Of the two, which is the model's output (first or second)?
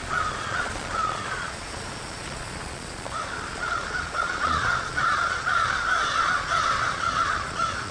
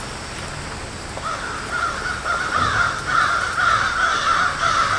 first